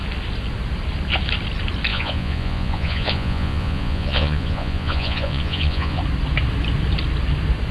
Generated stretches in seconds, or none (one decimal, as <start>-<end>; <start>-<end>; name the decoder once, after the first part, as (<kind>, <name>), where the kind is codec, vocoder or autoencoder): 1.9-6.0 (vocoder, Vocos)